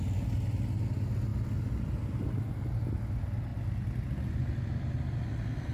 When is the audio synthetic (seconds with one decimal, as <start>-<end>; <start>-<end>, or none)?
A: none